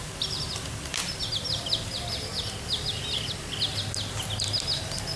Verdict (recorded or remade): recorded